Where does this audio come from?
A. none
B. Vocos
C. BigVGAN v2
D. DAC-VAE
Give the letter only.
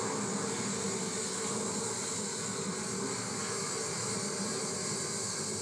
A